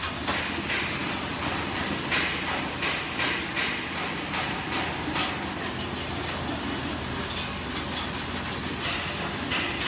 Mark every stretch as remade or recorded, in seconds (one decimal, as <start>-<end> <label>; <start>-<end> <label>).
0.0-9.9 recorded